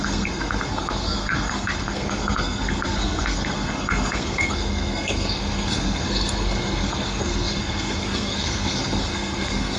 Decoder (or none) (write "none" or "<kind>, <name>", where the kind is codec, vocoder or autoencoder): codec, SNAC